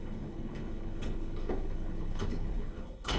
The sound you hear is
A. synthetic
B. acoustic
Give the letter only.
A